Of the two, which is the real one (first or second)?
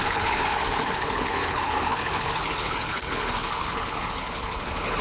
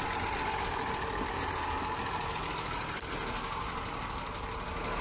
second